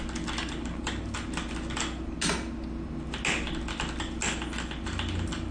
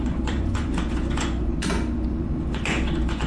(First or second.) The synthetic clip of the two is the second